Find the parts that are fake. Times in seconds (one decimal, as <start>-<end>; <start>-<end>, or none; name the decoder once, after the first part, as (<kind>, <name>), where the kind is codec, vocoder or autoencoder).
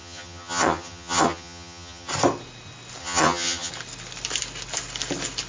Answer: 0.0-2.1 (vocoder, HiFi-GAN); 3.0-3.7